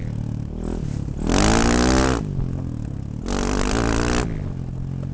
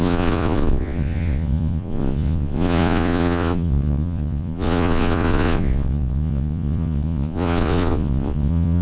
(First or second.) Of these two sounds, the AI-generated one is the second